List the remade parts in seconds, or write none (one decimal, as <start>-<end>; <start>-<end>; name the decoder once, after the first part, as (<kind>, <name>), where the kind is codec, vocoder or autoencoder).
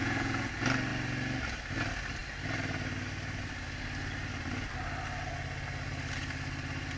0.0-0.5 (vocoder, Vocos)